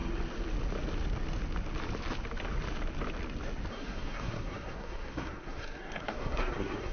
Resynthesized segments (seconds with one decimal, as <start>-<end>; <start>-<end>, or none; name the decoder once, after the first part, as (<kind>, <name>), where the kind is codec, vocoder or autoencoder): 3.7-6.9 (codec, SNAC)